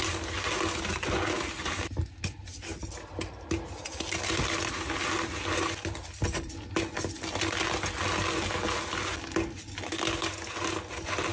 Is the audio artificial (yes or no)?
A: no